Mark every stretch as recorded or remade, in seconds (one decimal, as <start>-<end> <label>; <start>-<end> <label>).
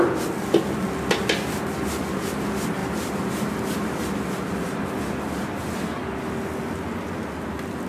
0.0-2.8 recorded; 2.8-4.2 remade; 4.2-7.9 recorded